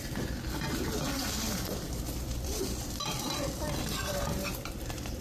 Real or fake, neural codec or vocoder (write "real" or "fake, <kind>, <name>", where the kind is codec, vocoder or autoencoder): fake, vocoder, BigVGAN v2